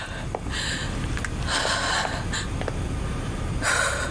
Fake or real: real